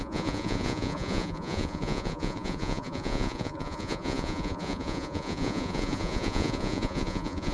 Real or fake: fake